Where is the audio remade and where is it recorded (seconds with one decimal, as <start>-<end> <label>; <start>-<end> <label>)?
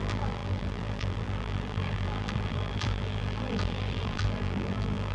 0.0-5.1 remade